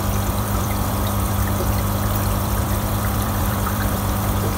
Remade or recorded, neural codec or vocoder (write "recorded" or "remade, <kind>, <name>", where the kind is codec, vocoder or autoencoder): remade, vocoder, BigVGAN v2